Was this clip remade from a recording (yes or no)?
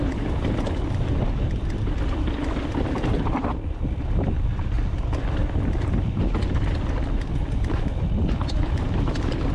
yes